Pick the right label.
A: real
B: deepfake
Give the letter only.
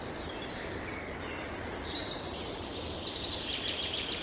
A